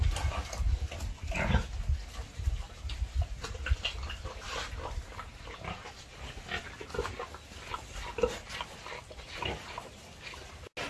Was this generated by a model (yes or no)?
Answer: no